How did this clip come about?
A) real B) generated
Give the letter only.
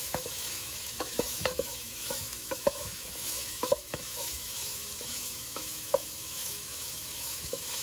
B